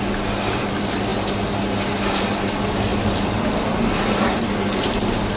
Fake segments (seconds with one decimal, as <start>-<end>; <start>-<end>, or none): none